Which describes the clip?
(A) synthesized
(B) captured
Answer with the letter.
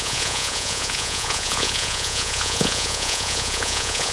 A